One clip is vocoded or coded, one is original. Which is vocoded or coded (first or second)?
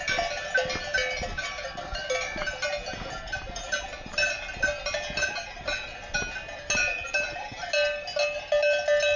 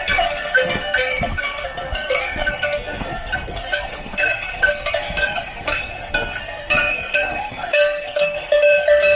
second